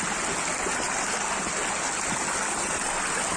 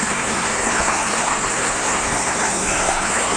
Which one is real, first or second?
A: first